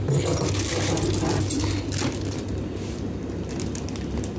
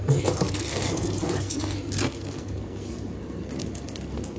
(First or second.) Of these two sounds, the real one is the first